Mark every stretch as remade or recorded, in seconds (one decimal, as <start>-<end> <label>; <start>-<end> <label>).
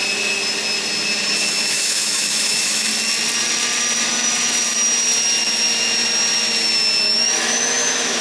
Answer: 0.0-1.5 recorded; 1.5-2.9 remade; 2.9-7.0 recorded; 7.0-8.2 remade